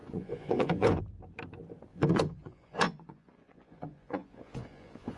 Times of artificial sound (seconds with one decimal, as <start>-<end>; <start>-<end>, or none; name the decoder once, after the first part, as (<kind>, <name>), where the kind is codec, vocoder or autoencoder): 0.0-1.0 (vocoder, Vocos); 1.9-5.2